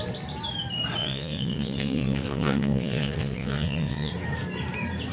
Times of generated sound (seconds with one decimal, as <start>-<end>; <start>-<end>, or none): 1.0-4.1